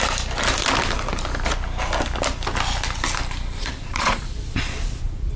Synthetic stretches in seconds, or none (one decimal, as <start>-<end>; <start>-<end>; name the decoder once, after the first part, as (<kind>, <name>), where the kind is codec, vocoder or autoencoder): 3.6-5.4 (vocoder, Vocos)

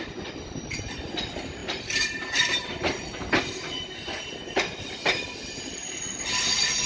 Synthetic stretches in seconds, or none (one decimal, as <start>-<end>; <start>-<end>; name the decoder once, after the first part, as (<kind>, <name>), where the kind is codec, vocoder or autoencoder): none

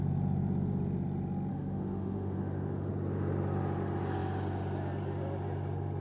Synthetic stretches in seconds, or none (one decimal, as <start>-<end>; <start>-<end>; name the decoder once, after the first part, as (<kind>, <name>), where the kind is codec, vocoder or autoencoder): 1.5-2.9 (autoencoder, DAC-VAE)

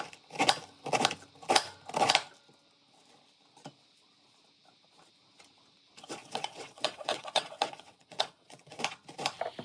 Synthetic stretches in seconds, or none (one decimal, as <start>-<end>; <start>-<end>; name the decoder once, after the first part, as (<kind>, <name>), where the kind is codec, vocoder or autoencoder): 6.2-8.8 (vocoder, WaveNeXt)